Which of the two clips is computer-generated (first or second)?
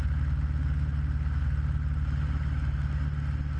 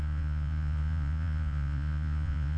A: second